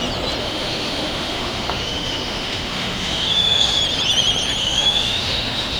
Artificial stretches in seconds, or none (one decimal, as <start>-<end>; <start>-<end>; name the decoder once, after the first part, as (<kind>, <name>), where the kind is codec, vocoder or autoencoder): 0.4-3.8 (autoencoder, DAC-VAE); 4.6-5.8